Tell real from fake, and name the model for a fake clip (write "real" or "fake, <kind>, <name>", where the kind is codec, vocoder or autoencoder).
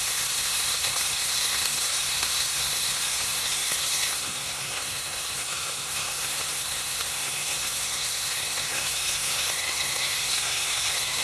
fake, codec, SNAC